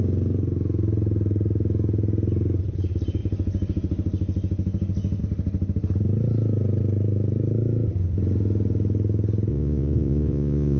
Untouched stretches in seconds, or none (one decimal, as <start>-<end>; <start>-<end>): 0.0-9.5